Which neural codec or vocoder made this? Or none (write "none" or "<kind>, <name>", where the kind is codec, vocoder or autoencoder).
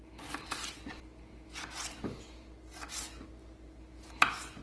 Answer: none